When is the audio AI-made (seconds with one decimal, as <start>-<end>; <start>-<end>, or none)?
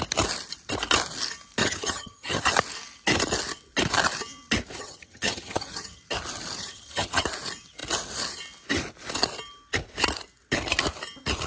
1.6-2.5; 4.8-6.0; 6.6-7.2